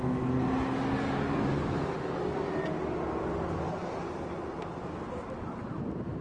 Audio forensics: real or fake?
real